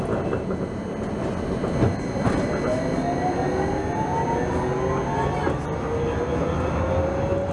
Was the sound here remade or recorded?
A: recorded